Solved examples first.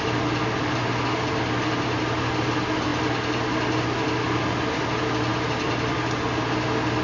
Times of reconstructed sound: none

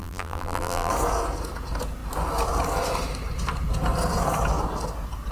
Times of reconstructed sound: 0.0-0.9 (vocoder, BigVGAN v2)

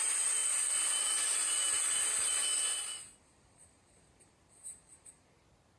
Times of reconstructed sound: 0.0-0.4 (vocoder, BigVGAN v2); 1.0-1.6; 4.3-5.8